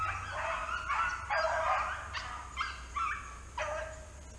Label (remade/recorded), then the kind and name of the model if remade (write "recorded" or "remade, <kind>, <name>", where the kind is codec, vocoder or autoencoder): recorded